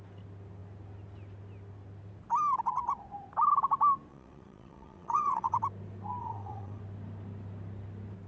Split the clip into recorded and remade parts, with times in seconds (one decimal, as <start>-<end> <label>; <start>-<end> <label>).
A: 0.0-4.1 recorded; 4.1-5.6 remade; 5.6-6.2 recorded; 6.2-6.8 remade; 6.8-8.3 recorded